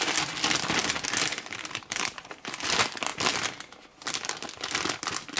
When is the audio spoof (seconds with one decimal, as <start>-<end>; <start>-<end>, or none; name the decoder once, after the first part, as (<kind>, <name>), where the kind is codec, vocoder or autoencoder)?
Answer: 1.3-2.6 (vocoder, BigVGAN v2)